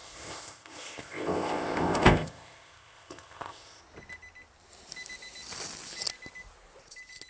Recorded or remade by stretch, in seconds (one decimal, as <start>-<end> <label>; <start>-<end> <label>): 0.0-3.8 remade; 3.8-7.3 recorded